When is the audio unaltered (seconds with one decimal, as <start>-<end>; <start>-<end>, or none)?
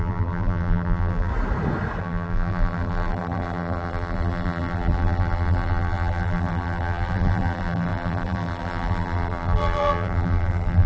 1.3-2.0